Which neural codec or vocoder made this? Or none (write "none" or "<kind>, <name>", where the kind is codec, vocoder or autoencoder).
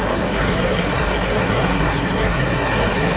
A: codec, SNAC